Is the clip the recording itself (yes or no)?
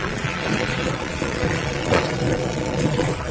no